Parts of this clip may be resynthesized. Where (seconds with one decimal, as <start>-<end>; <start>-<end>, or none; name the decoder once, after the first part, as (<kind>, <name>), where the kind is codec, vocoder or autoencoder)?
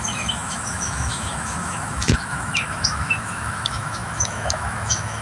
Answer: 0.0-5.2 (autoencoder, DAC-VAE)